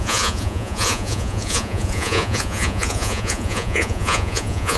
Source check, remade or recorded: remade